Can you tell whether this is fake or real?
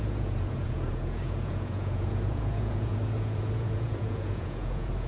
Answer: fake